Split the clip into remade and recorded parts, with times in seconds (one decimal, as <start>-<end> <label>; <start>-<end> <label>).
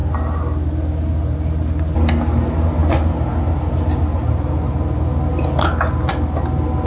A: 0.0-6.9 recorded